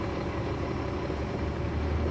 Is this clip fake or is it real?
real